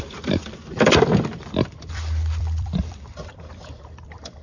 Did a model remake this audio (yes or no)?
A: yes